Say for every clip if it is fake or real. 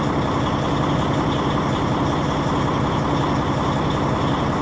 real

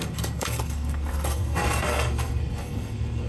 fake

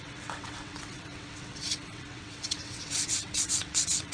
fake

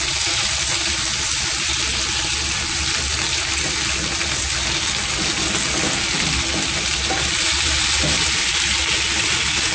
real